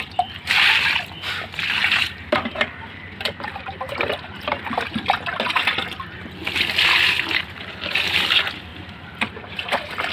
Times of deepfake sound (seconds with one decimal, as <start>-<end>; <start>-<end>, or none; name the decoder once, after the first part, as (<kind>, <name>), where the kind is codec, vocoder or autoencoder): 1.8-4.5 (vocoder, BigVGAN v2); 8.7-9.5